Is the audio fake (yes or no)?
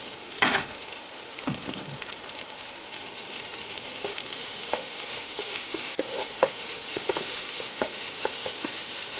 yes